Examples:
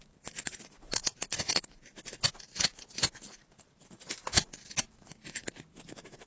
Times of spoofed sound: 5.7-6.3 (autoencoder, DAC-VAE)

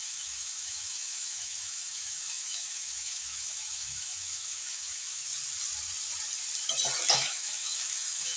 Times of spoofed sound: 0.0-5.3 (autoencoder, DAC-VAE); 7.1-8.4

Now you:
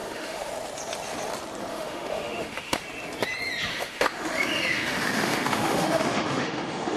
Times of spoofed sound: 0.0-0.5 (autoencoder, DAC-VAE); 1.7-2.8; 3.7-7.0

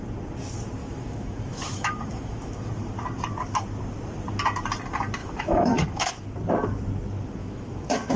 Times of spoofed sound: 0.8-2.7 (autoencoder, DAC-VAE); 5.2-6.1; 7.4-8.2

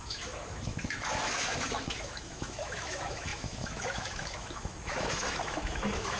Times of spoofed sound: 0.0-6.2 (autoencoder, DAC-VAE)